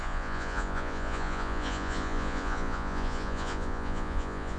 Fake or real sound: fake